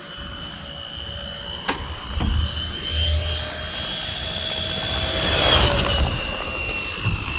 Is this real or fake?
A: real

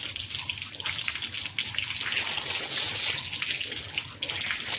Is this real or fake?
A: real